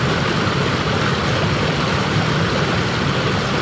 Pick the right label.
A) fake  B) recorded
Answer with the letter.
B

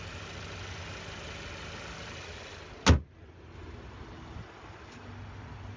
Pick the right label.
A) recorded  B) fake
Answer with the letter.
A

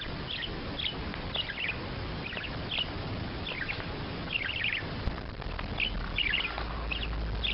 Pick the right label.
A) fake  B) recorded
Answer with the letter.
B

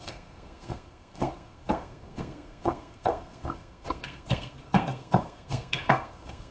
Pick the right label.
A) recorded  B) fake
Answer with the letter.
B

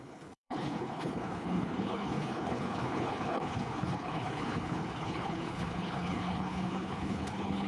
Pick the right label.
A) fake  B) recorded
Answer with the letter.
A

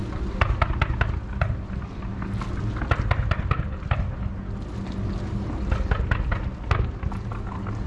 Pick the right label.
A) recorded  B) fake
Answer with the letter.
A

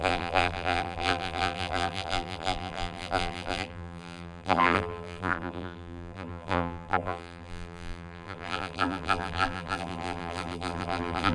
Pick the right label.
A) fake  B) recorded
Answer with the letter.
A